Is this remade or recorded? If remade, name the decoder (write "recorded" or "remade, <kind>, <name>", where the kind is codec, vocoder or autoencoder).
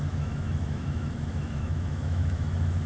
remade, autoencoder, DAC-VAE